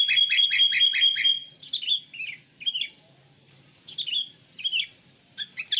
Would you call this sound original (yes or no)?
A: yes